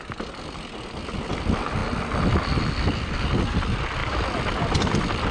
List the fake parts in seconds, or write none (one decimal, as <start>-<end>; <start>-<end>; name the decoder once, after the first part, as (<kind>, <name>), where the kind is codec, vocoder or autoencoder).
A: none